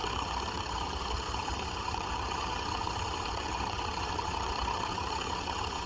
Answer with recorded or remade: remade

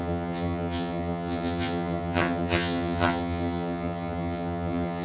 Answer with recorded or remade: remade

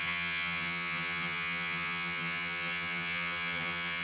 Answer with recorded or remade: remade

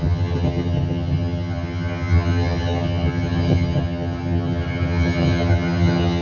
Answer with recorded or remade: remade